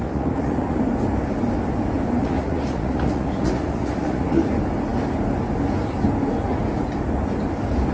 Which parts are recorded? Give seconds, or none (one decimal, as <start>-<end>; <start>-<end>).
0.8-2.2; 4.4-7.9